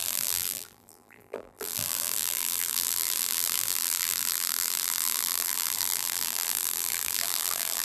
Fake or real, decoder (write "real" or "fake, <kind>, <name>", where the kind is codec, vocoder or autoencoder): fake, vocoder, BigVGAN v2